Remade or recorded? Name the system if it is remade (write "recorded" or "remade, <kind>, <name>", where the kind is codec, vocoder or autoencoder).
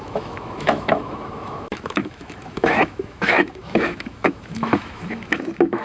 remade, autoencoder, DAC-VAE